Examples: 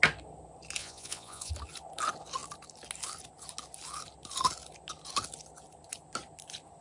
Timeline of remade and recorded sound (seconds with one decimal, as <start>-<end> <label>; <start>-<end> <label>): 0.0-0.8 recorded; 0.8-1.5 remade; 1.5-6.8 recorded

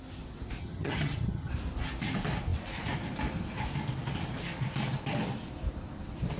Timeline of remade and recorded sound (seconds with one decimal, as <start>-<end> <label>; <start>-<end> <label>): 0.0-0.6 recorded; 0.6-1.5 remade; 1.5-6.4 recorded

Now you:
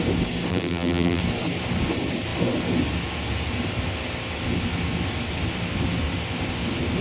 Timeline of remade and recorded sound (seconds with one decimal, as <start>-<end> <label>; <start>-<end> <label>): 0.0-0.5 recorded; 0.5-1.2 remade; 1.2-7.0 recorded

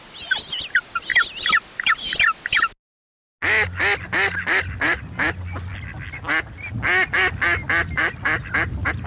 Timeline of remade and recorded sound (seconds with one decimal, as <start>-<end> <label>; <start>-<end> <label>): 0.0-9.1 recorded

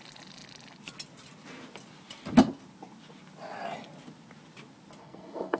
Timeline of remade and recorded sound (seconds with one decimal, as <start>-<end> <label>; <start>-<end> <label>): 0.0-5.0 recorded; 5.0-5.6 remade